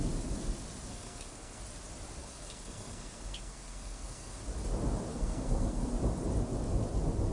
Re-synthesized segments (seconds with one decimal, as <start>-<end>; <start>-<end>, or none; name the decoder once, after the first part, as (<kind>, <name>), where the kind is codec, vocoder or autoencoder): 0.9-1.6 (codec, SNAC); 2.2-4.4; 5.1-5.9